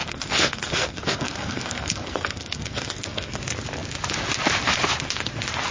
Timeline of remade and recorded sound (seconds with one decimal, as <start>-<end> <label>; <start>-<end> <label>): 0.0-3.4 remade; 3.4-5.7 recorded